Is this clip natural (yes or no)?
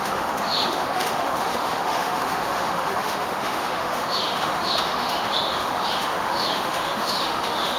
no